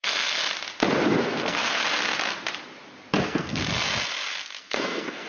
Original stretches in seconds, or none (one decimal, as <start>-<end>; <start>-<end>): 0.4-1.2; 1.8-3.2; 3.6-4.6

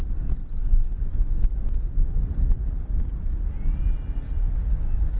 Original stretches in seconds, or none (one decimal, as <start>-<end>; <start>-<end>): 0.0-5.2

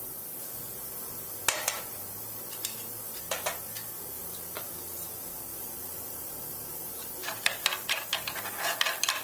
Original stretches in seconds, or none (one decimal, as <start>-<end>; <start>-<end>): 0.0-9.2

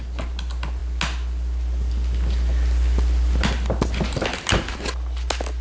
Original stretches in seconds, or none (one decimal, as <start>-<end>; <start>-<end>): 0.0-5.6

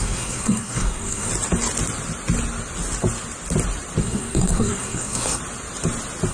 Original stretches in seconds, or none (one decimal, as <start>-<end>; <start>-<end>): 1.3-4.0; 5.4-6.3

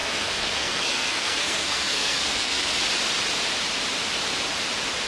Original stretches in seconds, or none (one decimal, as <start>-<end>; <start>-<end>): 2.8-5.1

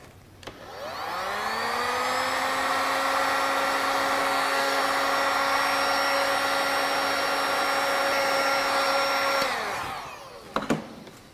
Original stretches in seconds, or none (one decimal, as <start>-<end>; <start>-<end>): 0.0-4.2; 4.8-11.3